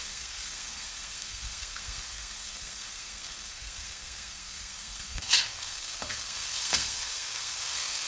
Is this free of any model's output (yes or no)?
no